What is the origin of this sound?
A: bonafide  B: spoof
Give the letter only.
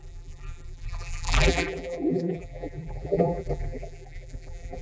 B